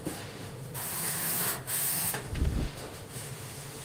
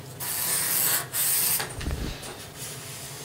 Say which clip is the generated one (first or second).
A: first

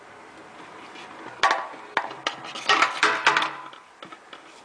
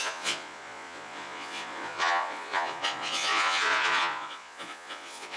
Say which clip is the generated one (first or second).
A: second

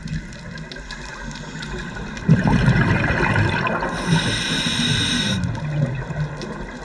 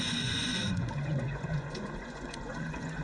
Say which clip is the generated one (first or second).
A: second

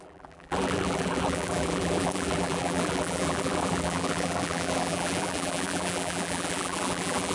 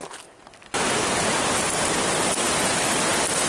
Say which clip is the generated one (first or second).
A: first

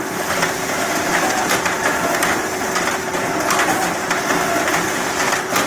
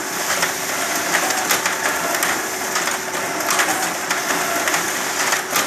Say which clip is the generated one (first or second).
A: first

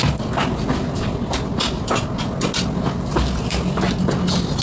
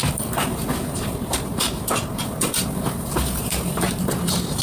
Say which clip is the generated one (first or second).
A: second